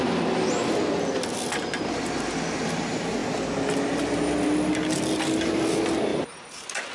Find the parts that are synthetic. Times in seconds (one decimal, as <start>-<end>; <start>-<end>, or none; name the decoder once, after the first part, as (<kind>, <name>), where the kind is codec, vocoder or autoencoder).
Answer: 6.1-6.9 (vocoder, BigVGAN v2)

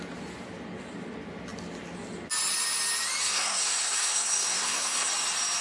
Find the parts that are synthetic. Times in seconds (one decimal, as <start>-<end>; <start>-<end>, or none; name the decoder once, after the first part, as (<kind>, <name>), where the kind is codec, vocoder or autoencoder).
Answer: 3.2-5.1 (codec, SNAC)